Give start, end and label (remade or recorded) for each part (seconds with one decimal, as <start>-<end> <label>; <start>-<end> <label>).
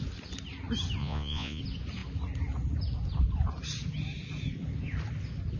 0.0-1.0 recorded; 1.0-1.6 remade; 1.6-5.6 recorded